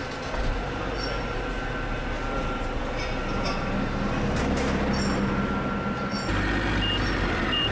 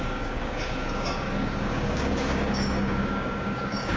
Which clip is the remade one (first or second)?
second